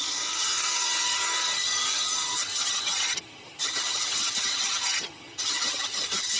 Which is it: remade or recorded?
remade